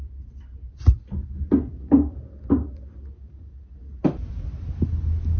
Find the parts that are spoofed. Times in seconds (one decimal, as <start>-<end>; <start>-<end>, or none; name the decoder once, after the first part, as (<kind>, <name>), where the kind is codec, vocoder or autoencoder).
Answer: none